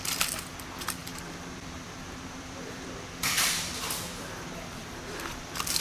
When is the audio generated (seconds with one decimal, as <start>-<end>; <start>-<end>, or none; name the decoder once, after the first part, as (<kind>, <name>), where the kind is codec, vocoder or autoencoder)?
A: 1.0-4.5 (vocoder, BigVGAN v2)